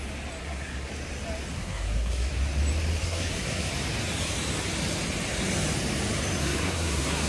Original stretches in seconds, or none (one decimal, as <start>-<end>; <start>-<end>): 0.0-0.4; 0.9-1.5; 2.3-3.0; 3.7-6.4